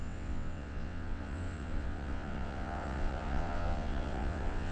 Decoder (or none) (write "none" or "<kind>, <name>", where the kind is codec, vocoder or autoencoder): vocoder, WaveNeXt